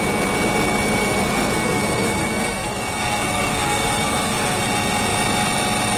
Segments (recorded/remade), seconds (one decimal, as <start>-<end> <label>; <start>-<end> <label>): 0.0-1.0 recorded; 1.0-4.6 remade; 4.6-6.0 recorded